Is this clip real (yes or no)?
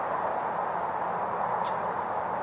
yes